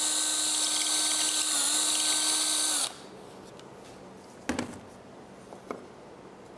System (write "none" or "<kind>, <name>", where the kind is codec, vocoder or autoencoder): none